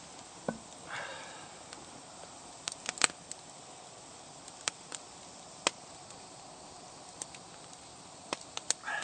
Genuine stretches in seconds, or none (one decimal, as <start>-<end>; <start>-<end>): 0.0-9.0

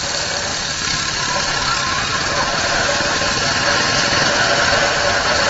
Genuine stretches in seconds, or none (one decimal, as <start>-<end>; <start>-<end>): 0.0-0.5; 1.6-5.5